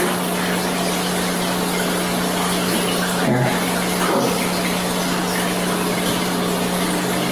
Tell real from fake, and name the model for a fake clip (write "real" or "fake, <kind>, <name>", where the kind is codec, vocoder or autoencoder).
real